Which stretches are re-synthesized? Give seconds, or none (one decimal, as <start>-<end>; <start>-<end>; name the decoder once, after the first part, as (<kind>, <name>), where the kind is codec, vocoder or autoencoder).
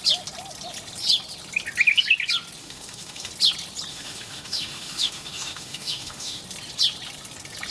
2.6-3.3 (autoencoder, DAC-VAE); 3.9-6.4